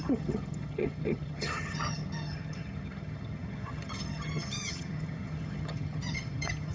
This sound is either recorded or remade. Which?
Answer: remade